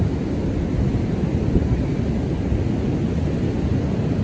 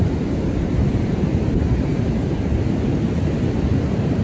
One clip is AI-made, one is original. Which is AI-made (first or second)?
second